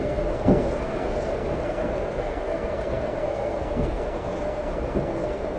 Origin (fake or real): fake